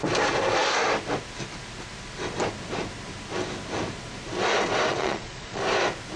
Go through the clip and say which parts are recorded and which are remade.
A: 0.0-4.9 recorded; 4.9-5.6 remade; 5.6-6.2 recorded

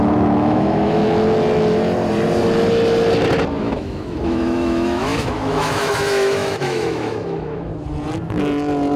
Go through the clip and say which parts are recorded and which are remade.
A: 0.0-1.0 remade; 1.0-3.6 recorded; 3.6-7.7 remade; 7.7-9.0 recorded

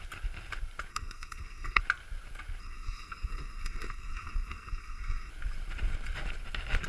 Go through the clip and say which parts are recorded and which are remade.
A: 0.0-0.9 recorded; 0.9-1.8 remade; 1.8-2.6 recorded; 2.6-5.3 remade; 5.3-6.9 recorded